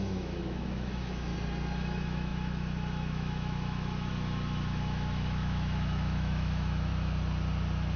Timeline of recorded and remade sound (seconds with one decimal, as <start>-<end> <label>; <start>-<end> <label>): 0.0-1.3 remade; 1.3-1.8 recorded; 1.8-6.9 remade; 6.9-8.0 recorded

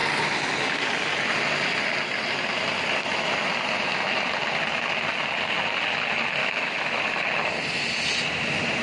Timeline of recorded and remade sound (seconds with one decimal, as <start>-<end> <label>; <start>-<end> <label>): 0.0-6.4 recorded; 6.4-7.0 remade; 7.0-8.8 recorded

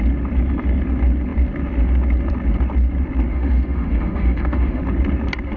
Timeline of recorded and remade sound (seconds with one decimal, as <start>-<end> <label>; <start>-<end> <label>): 0.0-3.3 recorded; 3.3-4.8 remade; 4.8-5.6 recorded

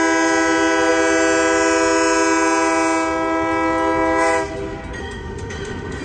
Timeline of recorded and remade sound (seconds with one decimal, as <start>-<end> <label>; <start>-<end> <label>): 0.0-5.0 recorded; 5.0-6.0 remade

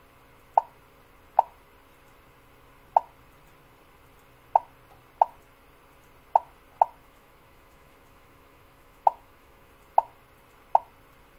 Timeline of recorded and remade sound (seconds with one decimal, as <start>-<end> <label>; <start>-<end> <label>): 0.0-7.0 recorded; 7.0-9.7 remade; 9.7-11.4 recorded